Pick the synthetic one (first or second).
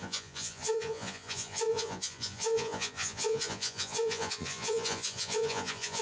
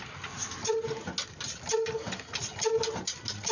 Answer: first